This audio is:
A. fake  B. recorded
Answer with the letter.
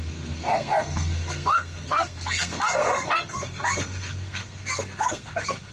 A